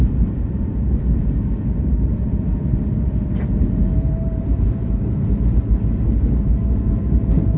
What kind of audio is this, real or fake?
fake